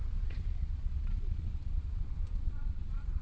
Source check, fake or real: fake